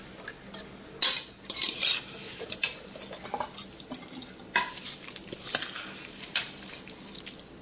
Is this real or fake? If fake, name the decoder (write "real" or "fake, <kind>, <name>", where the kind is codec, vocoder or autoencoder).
real